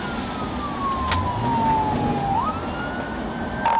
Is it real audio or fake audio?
real